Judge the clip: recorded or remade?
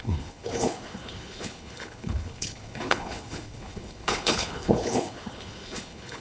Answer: remade